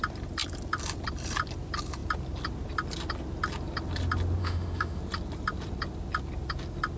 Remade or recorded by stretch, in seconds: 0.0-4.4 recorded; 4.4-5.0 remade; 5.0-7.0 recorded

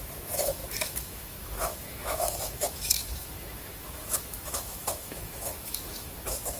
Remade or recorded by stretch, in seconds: 0.0-6.6 remade

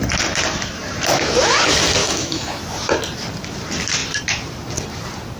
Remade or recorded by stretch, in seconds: 0.0-2.0 recorded; 2.0-2.6 remade; 2.6-5.4 recorded

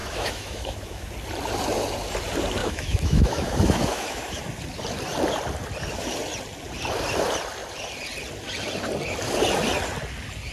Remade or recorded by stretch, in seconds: 0.0-1.1 remade; 1.1-2.6 recorded; 2.6-4.4 remade; 4.4-10.5 recorded